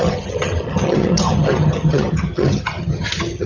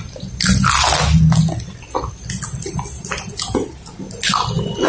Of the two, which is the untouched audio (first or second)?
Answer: second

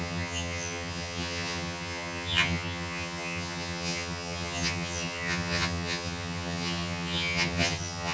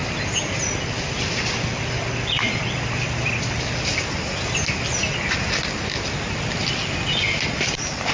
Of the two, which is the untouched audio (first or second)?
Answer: second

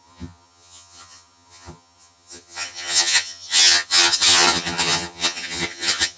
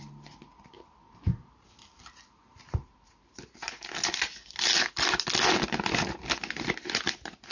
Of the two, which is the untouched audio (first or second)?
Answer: second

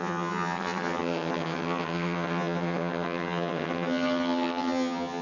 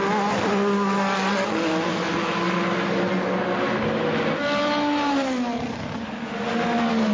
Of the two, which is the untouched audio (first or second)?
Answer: second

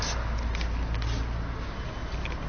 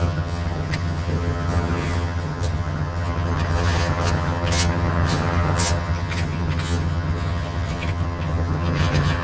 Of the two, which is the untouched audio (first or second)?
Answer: first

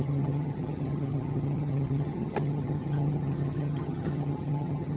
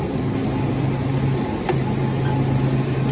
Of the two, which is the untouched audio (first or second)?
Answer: second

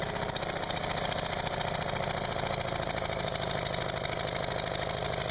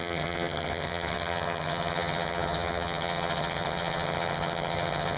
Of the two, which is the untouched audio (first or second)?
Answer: first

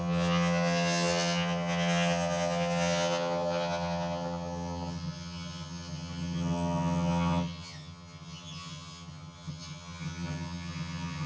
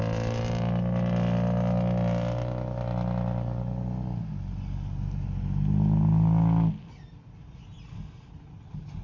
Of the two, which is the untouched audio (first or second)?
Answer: second